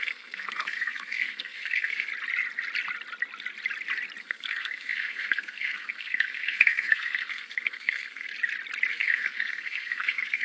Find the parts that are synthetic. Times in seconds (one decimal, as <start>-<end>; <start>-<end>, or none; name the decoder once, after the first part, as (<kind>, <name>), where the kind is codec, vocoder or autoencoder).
0.0-2.1 (codec, SNAC); 4.2-8.3; 8.9-10.4